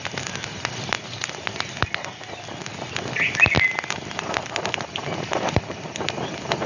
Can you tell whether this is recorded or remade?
recorded